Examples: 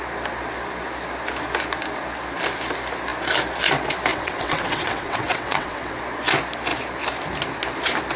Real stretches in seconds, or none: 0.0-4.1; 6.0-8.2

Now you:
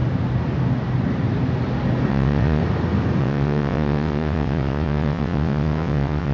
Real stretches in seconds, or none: 0.0-2.1; 2.6-3.2

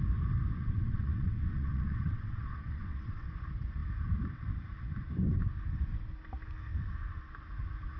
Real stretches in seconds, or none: 0.0-0.6; 3.3-8.0